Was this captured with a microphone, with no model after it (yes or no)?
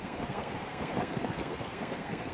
no